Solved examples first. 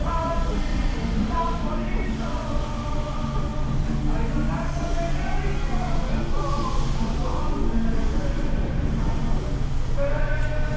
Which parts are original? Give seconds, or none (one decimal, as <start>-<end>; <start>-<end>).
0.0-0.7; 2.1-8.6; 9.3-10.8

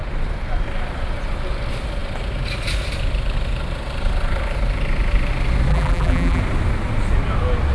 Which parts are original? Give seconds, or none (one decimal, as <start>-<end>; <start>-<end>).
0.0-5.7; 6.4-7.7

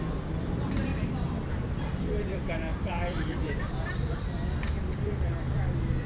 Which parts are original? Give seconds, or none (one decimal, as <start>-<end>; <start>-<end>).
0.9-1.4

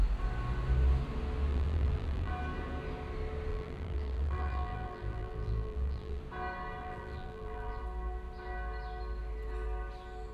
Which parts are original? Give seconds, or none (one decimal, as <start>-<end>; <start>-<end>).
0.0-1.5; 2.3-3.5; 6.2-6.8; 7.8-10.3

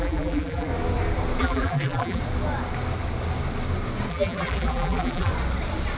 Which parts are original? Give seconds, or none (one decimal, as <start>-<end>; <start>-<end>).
0.7-1.4; 2.2-4.1; 5.3-6.0

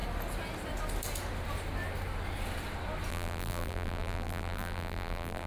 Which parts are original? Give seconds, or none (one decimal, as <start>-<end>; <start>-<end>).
0.0-3.1